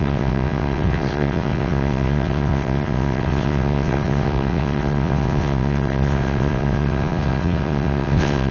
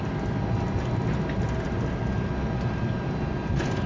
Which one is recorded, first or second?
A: second